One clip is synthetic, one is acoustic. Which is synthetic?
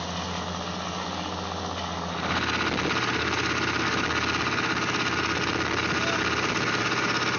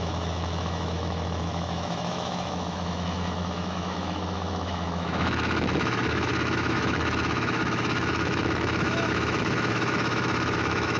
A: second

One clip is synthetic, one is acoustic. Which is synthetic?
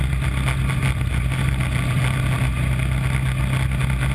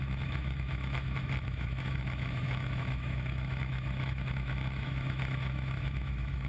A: second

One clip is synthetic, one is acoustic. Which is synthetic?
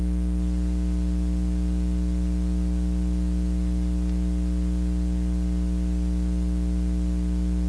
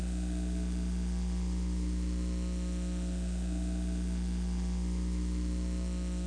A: second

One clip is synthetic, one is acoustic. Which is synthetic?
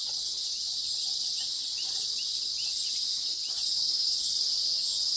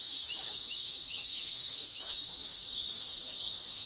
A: second